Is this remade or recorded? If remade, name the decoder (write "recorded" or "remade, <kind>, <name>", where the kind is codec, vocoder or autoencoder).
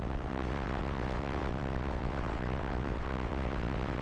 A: remade, vocoder, WaveNeXt